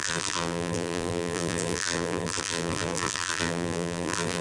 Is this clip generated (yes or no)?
yes